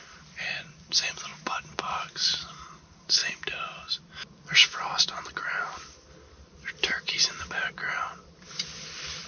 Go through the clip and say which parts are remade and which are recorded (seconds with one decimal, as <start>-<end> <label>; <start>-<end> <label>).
0.0-1.3 remade; 1.3-1.8 recorded; 1.8-3.2 remade; 3.2-6.1 recorded; 6.1-9.3 remade